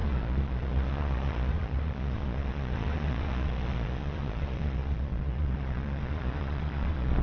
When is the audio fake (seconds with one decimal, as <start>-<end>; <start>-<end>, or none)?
0.0-7.2